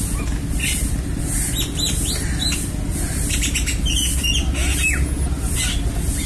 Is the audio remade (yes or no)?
no